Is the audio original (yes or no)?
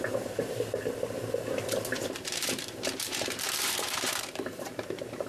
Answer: no